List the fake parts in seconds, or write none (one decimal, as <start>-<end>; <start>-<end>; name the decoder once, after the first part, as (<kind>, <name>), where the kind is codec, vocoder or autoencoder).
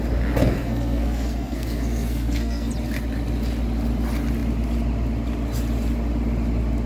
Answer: 0.4-2.7 (codec, SNAC)